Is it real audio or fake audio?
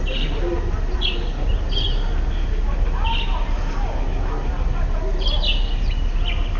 real